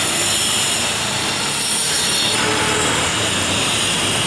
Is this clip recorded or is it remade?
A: recorded